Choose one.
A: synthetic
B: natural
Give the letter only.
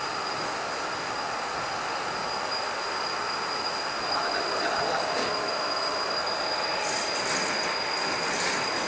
B